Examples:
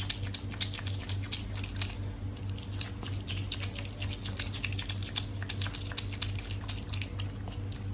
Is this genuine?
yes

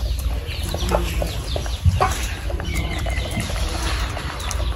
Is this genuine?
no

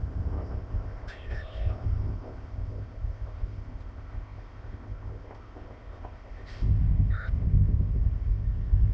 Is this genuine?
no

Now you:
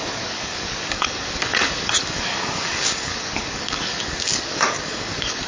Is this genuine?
no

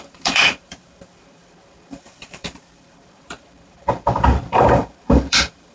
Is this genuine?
no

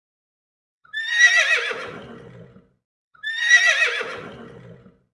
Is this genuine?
no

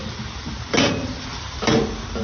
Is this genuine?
yes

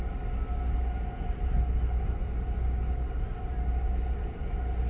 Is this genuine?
yes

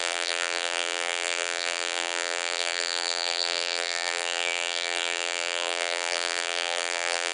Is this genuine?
no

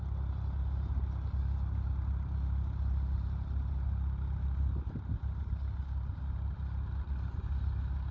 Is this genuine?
yes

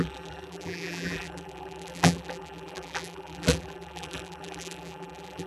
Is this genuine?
no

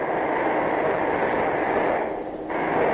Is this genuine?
yes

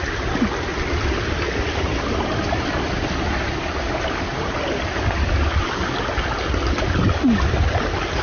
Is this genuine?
yes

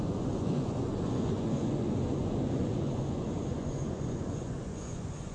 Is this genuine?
no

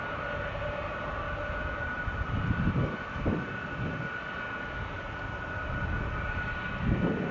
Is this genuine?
yes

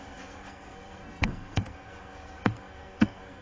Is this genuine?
no